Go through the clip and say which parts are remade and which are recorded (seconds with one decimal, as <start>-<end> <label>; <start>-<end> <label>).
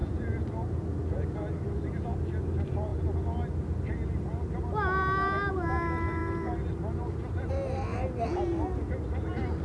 0.0-9.6 recorded